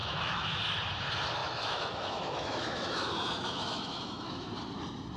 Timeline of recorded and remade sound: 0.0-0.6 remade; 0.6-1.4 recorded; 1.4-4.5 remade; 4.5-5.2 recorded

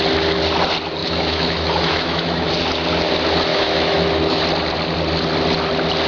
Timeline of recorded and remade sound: 0.0-1.0 recorded; 1.0-2.5 remade; 2.5-3.5 recorded; 3.5-4.4 remade; 4.4-6.1 recorded

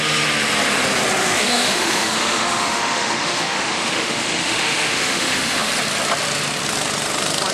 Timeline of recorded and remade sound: 0.0-1.2 recorded; 1.2-5.7 remade; 5.7-7.5 recorded